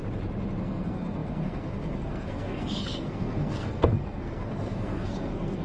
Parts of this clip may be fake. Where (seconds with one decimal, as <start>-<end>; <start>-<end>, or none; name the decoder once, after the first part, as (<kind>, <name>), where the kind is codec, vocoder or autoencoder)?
0.6-5.6 (codec, SNAC)